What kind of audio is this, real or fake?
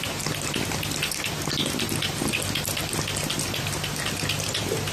real